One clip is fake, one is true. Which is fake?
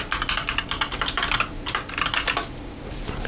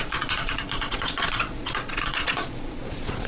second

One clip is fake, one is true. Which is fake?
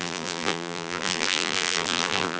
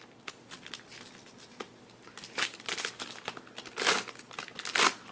first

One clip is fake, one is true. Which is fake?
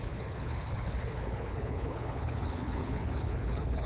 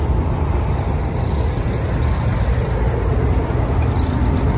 first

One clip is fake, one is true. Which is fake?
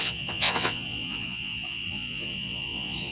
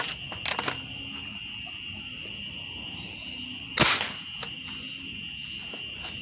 first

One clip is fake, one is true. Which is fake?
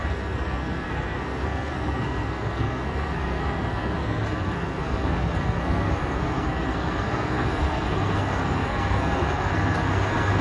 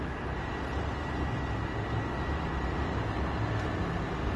first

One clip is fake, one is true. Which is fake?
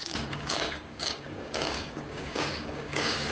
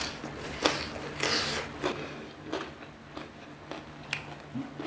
first